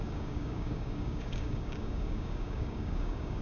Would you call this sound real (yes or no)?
no